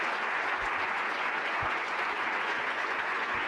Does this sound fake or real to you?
fake